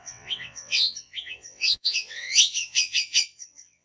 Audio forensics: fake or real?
fake